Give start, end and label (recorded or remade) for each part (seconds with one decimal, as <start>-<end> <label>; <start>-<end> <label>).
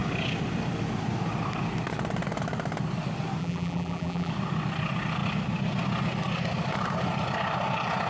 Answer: 0.0-3.4 recorded; 3.4-4.3 remade; 4.3-8.1 recorded